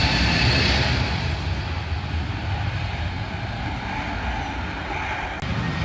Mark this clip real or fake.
real